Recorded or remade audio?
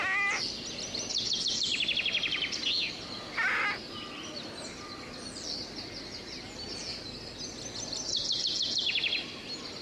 recorded